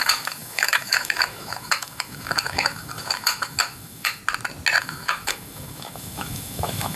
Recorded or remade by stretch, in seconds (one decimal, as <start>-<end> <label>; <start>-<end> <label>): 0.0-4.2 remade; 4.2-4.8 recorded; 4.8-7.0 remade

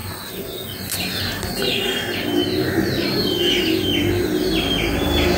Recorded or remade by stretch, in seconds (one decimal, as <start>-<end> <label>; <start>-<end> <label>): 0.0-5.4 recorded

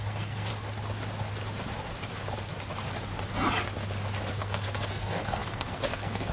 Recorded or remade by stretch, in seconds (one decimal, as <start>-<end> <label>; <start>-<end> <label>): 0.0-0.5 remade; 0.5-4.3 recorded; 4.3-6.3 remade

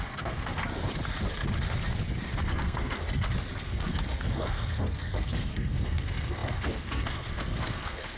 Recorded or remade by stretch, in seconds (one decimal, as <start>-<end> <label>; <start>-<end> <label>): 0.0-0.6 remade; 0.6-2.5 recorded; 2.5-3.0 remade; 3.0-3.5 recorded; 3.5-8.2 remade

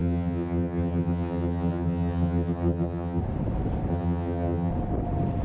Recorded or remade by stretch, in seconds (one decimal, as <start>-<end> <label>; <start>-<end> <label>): 0.0-3.2 remade; 3.2-3.9 recorded; 3.9-4.7 remade; 4.7-5.4 recorded

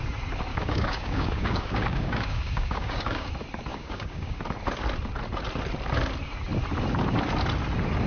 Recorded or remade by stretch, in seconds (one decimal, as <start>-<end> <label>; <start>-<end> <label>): 0.0-0.5 recorded; 0.5-3.3 remade; 3.3-3.7 recorded; 3.7-4.4 remade; 4.4-8.1 recorded

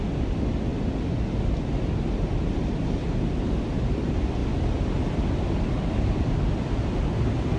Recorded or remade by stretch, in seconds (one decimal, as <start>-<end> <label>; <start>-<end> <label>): 0.0-7.6 recorded